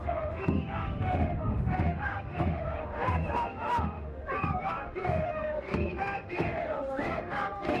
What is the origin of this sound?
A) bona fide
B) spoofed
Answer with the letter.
B